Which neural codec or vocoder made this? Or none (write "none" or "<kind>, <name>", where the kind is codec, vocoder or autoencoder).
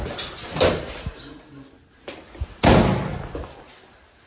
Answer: none